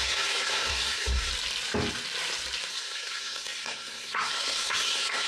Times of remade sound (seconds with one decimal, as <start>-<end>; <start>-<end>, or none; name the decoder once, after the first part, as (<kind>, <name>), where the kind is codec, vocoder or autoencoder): 0.0-1.3 (codec, SNAC); 2.7-5.3

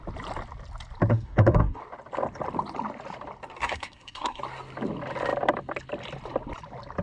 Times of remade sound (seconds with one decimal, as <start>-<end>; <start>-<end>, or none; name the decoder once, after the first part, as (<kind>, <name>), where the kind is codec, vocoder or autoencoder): 1.1-1.8 (codec, SNAC); 3.6-4.4

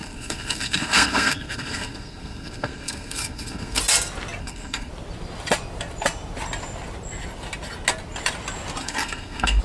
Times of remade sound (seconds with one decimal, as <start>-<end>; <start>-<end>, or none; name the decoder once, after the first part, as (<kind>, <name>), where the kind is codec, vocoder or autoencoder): 0.0-3.8 (codec, SNAC); 4.4-4.9; 8.8-9.6

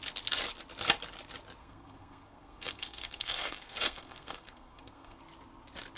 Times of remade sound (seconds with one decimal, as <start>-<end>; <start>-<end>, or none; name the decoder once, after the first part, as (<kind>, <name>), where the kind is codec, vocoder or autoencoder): 1.6-5.2 (codec, SNAC)

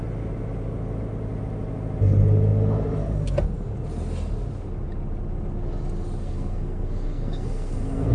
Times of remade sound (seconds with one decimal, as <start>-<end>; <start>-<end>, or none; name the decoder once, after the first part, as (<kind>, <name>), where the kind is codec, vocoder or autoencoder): 6.2-8.1 (codec, SNAC)

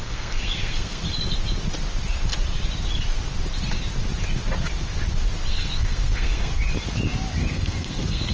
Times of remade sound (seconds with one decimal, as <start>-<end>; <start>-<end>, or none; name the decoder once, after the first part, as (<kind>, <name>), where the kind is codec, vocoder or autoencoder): 0.0-1.0 (codec, SNAC); 5.5-6.5; 7.5-8.3

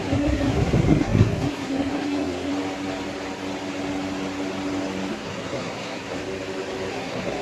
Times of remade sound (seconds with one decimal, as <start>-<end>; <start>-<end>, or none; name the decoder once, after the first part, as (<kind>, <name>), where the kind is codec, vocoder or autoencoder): 0.0-2.5 (codec, SNAC); 5.1-6.2; 6.9-7.4